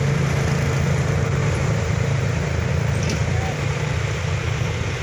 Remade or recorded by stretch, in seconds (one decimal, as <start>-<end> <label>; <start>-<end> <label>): 0.0-1.4 recorded; 1.4-2.7 remade; 2.7-3.2 recorded; 3.2-5.0 remade